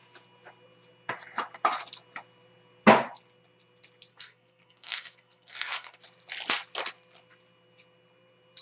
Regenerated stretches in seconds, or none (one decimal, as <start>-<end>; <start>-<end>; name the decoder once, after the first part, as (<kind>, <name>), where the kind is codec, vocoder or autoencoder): 4.1-6.0 (codec, SNAC)